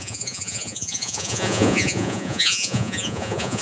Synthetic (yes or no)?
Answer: yes